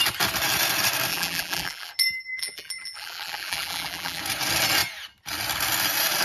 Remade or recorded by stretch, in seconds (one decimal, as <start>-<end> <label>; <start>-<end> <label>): 0.0-1.1 recorded; 1.1-1.9 remade; 1.9-2.3 recorded; 2.3-4.2 remade; 4.2-6.2 recorded